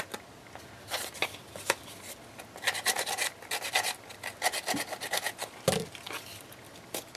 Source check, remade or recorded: recorded